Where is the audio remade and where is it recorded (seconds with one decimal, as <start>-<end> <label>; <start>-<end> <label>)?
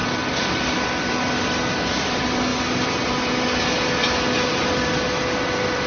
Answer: 0.0-1.1 remade; 1.1-5.9 recorded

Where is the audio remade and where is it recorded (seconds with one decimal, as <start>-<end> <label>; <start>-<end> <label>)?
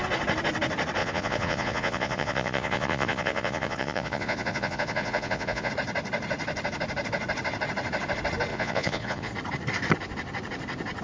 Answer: 0.0-1.0 recorded; 1.0-5.7 remade; 5.7-8.5 recorded; 8.5-9.3 remade; 9.3-11.0 recorded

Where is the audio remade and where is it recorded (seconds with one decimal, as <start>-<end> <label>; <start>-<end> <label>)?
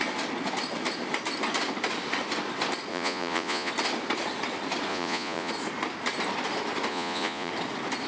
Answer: 0.0-2.9 recorded; 2.9-3.7 remade; 3.7-4.9 recorded; 4.9-5.5 remade; 5.5-6.9 recorded; 6.9-7.5 remade; 7.5-8.1 recorded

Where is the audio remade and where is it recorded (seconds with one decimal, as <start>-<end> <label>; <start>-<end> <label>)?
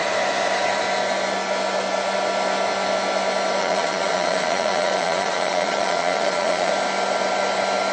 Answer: 0.0-3.6 recorded; 3.6-6.7 remade; 6.7-7.9 recorded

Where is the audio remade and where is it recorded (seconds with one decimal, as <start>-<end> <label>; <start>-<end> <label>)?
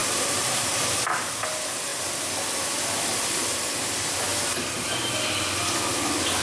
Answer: 0.0-1.3 remade; 1.3-6.4 recorded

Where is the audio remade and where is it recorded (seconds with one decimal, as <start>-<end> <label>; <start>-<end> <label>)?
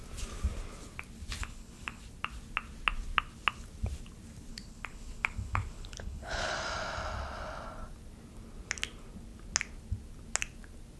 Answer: 0.0-1.4 recorded; 1.4-2.0 remade; 2.0-4.5 recorded; 4.5-6.5 remade; 6.5-11.0 recorded